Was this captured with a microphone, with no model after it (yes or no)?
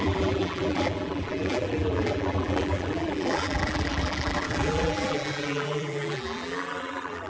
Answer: no